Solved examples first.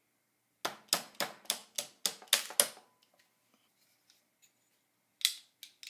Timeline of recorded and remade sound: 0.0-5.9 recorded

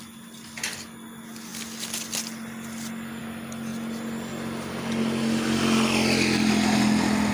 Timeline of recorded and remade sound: 0.0-7.3 recorded